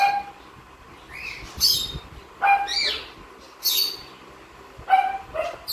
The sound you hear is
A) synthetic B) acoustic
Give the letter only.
B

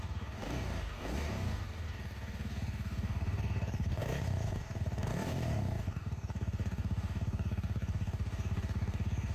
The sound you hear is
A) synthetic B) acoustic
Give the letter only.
A